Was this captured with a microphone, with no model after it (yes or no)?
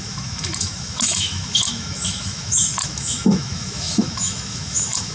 no